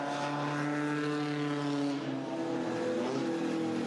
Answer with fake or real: real